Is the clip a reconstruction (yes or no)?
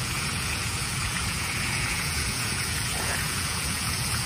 yes